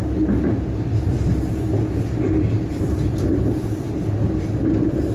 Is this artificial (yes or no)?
no